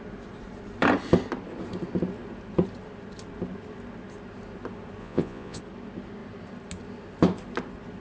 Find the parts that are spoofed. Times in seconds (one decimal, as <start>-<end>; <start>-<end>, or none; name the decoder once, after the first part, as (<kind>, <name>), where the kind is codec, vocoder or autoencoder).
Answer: 5.0-5.6 (vocoder, Vocos)

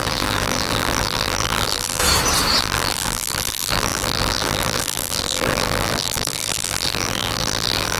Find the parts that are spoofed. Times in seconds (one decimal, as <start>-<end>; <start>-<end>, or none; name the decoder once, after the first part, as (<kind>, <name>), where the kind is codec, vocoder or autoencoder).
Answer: 0.0-2.0 (vocoder, BigVGAN v2); 2.6-8.0

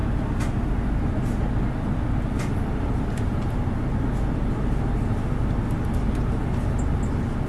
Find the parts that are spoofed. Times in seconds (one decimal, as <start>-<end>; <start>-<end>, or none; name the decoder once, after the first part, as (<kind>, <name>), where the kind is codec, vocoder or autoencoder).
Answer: none

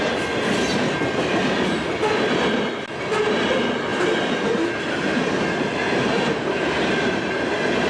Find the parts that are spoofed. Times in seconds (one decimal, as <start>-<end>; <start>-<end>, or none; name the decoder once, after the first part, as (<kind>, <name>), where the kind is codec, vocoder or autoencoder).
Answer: 3.9-7.9 (vocoder, BigVGAN v2)

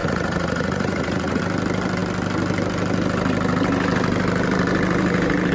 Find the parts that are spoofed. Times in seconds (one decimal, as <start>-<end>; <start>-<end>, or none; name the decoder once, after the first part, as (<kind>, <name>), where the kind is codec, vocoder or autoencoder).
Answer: 0.0-1.4 (vocoder, Vocos)

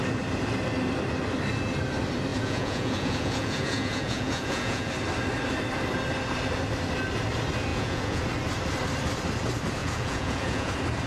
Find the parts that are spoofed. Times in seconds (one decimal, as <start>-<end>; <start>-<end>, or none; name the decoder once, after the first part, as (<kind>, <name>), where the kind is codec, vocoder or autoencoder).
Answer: 2.3-4.9 (vocoder, Vocos); 7.7-8.2; 9.8-10.7

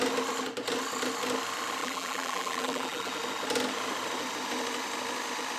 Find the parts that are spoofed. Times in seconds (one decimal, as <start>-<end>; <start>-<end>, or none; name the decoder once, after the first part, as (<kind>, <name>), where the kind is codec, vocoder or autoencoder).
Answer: 1.8-3.1 (vocoder, BigVGAN v2)

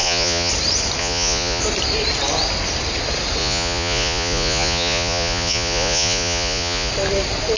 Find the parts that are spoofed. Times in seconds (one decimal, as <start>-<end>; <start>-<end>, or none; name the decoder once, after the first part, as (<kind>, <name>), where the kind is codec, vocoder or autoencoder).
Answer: 0.0-0.5 (vocoder, Vocos); 1.0-1.6; 3.4-6.9